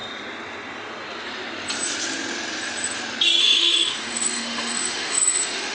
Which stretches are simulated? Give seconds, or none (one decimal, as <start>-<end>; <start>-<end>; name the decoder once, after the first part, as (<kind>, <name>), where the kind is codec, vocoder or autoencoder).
3.4-5.7 (autoencoder, DAC-VAE)